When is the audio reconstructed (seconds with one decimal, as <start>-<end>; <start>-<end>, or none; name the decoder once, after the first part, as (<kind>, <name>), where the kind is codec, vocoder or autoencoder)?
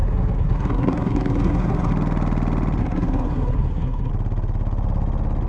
0.0-1.9 (codec, SNAC); 2.8-4.1